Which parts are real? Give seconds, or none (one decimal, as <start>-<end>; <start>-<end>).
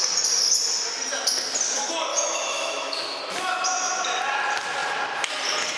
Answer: 0.0-2.1; 3.2-5.8